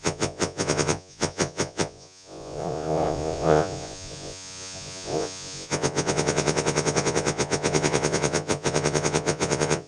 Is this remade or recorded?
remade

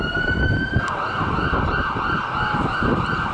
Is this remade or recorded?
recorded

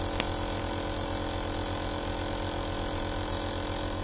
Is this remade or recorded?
recorded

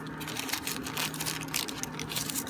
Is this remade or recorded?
recorded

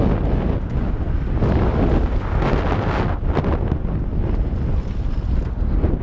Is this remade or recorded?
recorded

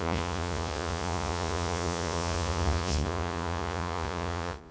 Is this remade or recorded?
remade